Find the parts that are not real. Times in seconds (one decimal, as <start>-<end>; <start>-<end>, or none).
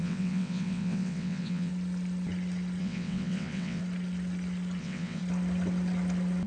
0.0-1.7; 2.8-3.8; 4.8-5.2